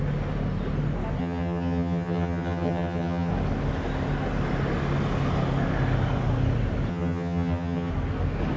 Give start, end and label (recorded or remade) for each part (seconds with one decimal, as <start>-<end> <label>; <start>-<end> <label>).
0.0-1.2 recorded; 1.2-3.3 remade; 3.3-6.9 recorded; 6.9-7.9 remade; 7.9-8.6 recorded